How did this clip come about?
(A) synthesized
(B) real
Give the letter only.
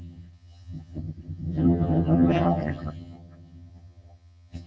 A